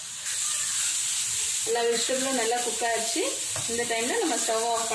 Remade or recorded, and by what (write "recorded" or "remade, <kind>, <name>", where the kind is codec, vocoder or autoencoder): recorded